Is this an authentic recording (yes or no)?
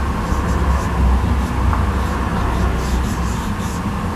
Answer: yes